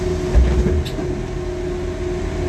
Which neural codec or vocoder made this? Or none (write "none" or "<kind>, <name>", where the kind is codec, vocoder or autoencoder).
none